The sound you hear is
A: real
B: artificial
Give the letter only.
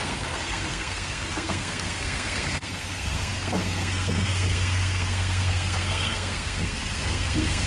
B